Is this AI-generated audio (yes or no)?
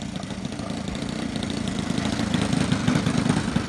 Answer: no